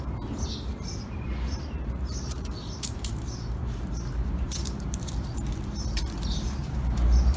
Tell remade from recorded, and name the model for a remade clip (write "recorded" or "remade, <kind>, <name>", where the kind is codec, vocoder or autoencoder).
remade, vocoder, BigVGAN v2